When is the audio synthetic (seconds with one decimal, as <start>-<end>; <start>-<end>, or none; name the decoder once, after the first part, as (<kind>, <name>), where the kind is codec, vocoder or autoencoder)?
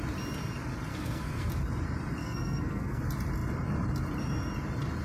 0.9-1.5 (codec, SNAC); 2.2-3.0